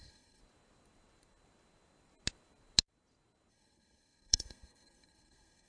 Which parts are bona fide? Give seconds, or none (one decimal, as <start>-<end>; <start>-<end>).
0.4-3.5